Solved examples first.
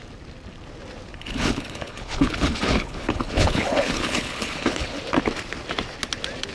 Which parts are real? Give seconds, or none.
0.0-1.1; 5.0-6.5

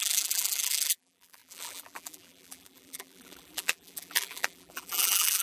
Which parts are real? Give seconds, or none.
none

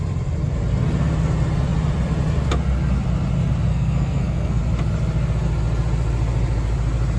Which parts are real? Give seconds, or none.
0.0-3.7; 4.6-7.2

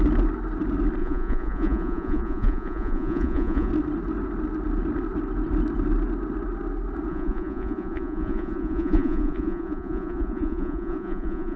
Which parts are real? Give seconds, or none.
0.0-1.0; 3.7-7.1

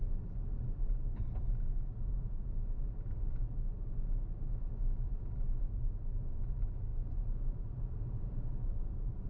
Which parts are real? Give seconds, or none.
0.0-9.3